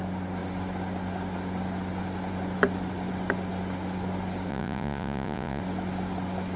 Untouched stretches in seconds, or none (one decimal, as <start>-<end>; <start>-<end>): 0.0-4.5; 5.6-6.6